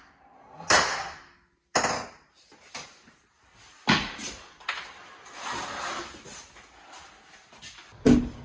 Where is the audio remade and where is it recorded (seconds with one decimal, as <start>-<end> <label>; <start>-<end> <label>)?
0.0-8.4 recorded